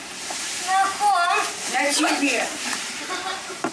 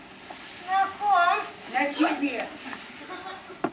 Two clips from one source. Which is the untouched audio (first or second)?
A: second